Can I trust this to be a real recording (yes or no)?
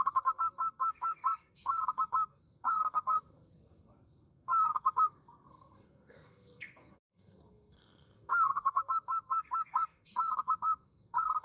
no